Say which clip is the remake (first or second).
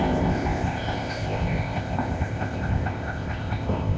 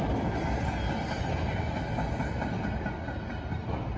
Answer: first